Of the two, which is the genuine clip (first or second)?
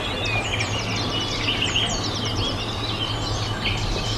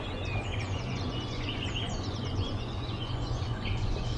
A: first